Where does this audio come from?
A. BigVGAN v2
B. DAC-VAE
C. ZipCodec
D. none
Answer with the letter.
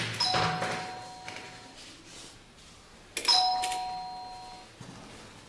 D